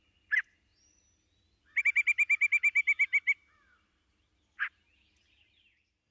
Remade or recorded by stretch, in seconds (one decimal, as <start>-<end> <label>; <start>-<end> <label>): 0.0-6.1 recorded